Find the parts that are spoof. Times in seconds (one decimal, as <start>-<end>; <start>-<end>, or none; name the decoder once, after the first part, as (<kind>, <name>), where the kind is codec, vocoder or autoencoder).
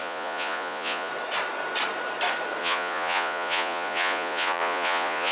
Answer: 0.0-1.1 (vocoder, Vocos); 2.6-5.3